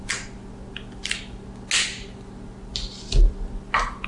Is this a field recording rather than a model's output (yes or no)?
yes